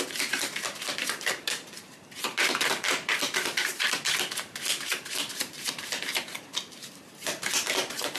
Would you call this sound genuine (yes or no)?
no